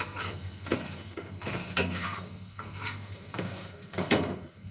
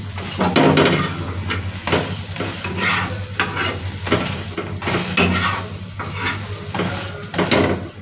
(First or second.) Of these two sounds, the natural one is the second